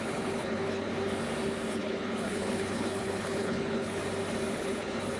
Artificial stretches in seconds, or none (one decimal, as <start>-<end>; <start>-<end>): 0.0-0.9; 1.7-4.0; 4.5-5.2